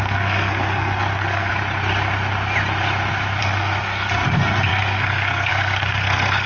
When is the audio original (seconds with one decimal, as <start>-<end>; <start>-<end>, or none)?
1.5-3.4